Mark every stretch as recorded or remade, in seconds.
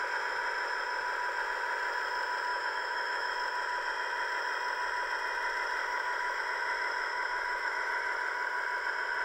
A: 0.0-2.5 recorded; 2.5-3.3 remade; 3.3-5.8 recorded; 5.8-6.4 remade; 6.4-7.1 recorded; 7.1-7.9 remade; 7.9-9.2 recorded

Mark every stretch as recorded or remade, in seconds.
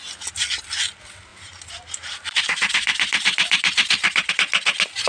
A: 0.0-1.3 recorded; 1.3-4.3 remade; 4.3-5.1 recorded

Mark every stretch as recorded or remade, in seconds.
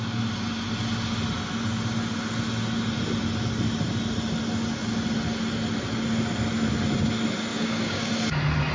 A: 0.0-7.5 recorded; 7.5-8.1 remade; 8.1-8.7 recorded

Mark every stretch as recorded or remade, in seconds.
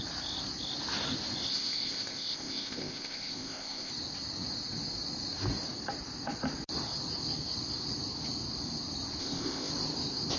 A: 0.0-1.5 recorded; 1.5-3.9 remade; 3.9-9.2 recorded; 9.2-9.7 remade; 9.7-10.4 recorded